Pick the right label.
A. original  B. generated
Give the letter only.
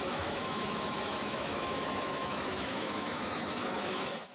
B